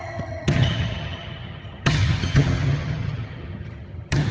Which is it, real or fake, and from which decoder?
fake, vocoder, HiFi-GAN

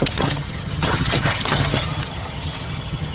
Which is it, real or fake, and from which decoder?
fake, vocoder, HiFi-GAN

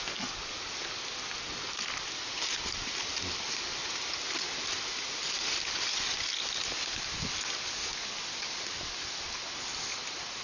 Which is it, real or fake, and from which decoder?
real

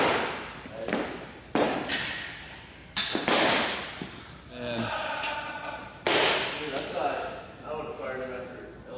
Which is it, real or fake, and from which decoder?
real